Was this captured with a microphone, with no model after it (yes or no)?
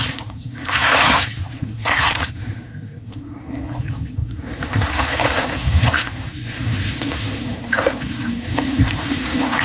no